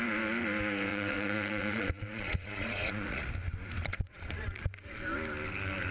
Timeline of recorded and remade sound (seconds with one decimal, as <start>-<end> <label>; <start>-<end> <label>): 0.0-0.9 recorded; 0.9-3.3 remade; 3.3-3.8 recorded; 3.8-4.6 remade; 4.6-5.9 recorded